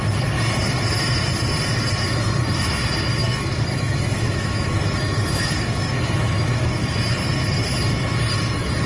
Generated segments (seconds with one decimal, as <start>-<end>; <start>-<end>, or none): 3.2-6.9